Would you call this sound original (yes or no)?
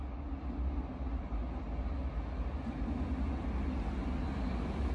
yes